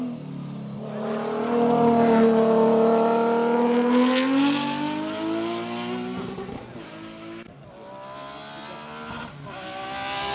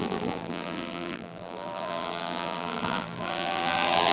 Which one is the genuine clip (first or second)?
first